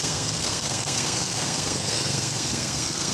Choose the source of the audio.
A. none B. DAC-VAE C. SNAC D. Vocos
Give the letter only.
C